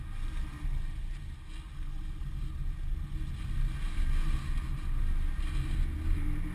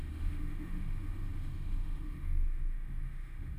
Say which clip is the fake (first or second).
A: second